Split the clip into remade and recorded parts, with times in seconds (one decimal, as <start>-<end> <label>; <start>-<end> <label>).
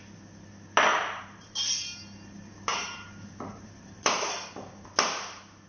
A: 0.0-0.9 recorded; 0.9-1.6 remade; 1.6-2.7 recorded; 2.7-4.4 remade; 4.4-5.7 recorded